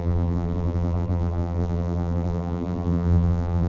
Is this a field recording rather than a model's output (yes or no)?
no